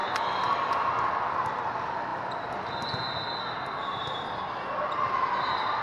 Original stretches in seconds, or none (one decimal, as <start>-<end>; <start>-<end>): 0.0-5.8